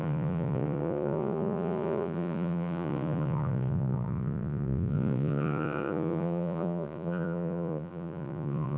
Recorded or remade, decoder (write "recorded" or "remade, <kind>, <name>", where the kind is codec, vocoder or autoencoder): remade, vocoder, Vocos